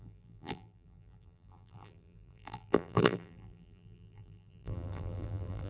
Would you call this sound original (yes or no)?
no